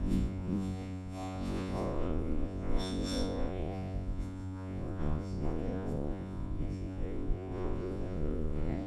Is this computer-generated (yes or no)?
yes